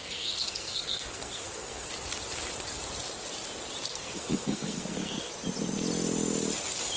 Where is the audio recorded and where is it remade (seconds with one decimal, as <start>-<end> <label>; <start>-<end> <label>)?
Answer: 0.0-1.9 remade; 1.9-3.9 recorded; 3.9-5.3 remade; 5.3-7.0 recorded